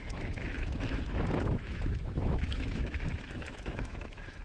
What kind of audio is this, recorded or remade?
remade